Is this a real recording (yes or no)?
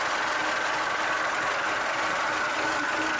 yes